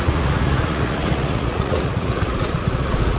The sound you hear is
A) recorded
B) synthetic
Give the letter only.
B